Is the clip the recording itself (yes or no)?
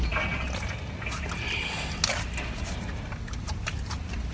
yes